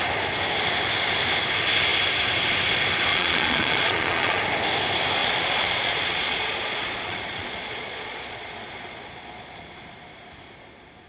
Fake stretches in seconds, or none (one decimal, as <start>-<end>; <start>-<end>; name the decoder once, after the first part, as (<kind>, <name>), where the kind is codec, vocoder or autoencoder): 3.1-4.4 (vocoder, Vocos); 5.2-9.6